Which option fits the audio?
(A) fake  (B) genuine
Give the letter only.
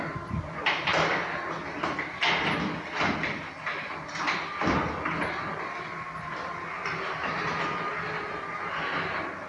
B